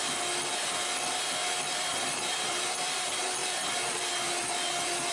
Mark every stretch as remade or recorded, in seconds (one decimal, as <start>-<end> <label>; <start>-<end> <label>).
0.0-1.7 recorded; 1.7-5.1 remade